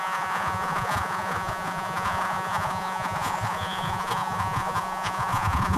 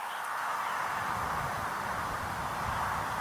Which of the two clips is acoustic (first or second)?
second